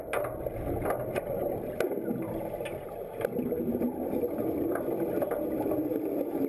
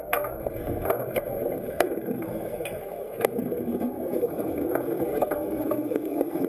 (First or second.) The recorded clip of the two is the first